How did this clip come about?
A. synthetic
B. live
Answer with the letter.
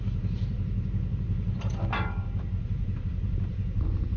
A